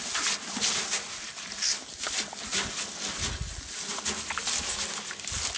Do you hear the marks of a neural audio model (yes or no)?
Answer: no